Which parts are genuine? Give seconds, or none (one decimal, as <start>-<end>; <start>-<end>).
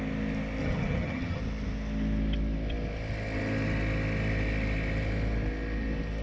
0.0-0.6; 1.4-6.2